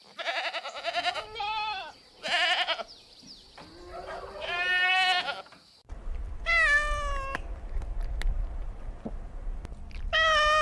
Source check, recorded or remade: recorded